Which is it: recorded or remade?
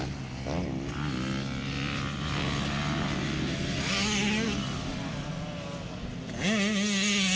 recorded